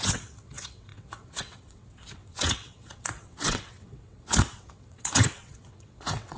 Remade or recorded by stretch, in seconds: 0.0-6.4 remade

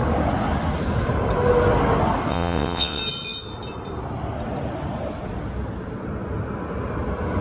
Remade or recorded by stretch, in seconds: 0.0-2.3 recorded; 2.3-3.0 remade; 3.0-7.4 recorded

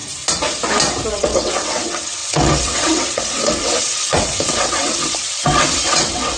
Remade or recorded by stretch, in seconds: 0.0-1.1 recorded; 1.1-6.4 remade

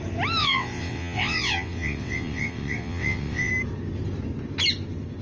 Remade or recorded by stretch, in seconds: 0.0-0.4 recorded; 0.4-3.5 remade; 3.5-5.2 recorded